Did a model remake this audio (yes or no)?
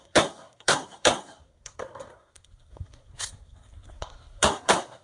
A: yes